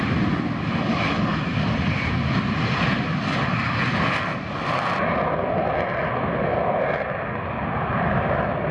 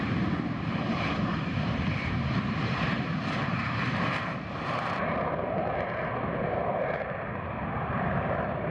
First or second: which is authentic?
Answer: first